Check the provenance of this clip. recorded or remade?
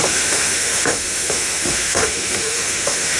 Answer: remade